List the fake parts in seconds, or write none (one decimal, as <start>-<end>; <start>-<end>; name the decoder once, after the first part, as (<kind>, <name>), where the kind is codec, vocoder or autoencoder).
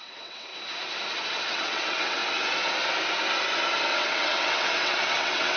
0.0-0.5 (vocoder, WaveNeXt); 1.5-2.2; 3.9-5.6